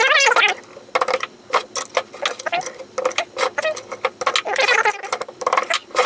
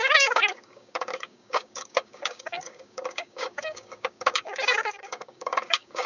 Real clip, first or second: first